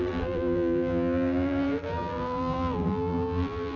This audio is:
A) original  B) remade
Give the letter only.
B